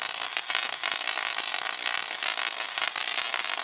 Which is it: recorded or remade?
recorded